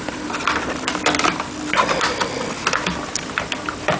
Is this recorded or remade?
remade